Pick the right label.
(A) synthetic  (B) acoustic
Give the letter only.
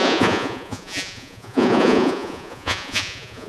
A